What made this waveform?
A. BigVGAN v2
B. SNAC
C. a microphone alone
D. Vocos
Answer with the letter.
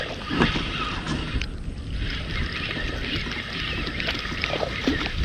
C